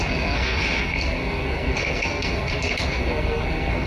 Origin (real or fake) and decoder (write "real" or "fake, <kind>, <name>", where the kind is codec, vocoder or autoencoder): fake, codec, SNAC